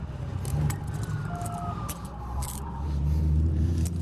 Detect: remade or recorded recorded